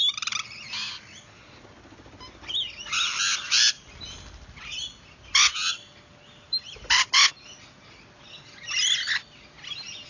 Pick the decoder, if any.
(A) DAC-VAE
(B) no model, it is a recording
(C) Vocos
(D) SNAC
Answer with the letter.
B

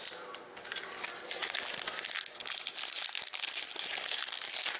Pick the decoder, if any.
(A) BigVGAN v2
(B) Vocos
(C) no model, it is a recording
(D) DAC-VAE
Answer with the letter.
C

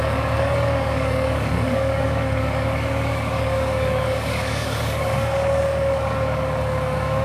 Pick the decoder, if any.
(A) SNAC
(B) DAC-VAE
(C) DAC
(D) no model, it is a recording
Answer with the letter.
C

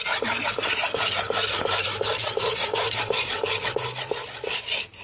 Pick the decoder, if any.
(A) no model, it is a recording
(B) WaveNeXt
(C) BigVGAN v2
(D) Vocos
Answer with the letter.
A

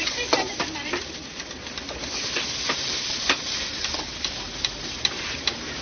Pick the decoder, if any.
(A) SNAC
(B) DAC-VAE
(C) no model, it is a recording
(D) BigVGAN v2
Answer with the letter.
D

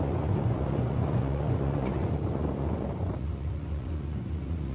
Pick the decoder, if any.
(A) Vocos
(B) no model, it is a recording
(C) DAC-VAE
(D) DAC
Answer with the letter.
A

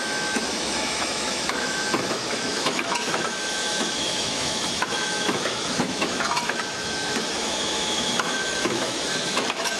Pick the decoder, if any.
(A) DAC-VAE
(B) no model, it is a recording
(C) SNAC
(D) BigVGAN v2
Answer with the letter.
A